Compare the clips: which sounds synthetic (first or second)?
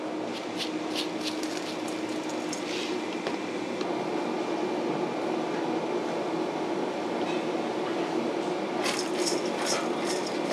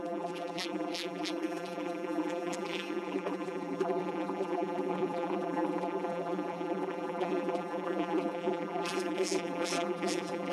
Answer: second